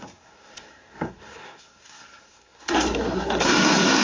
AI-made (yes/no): yes